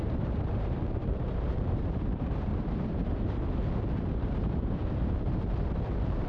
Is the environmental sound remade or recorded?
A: remade